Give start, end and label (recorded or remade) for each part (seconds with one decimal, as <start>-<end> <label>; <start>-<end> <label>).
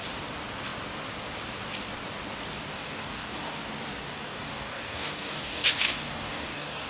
0.0-2.7 recorded; 2.7-3.5 remade; 3.5-4.0 recorded; 4.0-6.9 remade